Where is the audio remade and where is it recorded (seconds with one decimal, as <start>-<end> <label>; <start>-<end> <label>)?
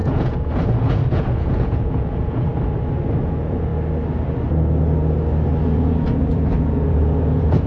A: 0.0-2.5 remade; 2.5-3.2 recorded; 3.2-3.7 remade; 3.7-5.6 recorded; 5.6-7.7 remade